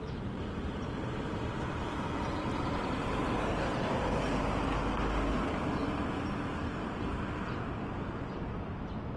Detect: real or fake real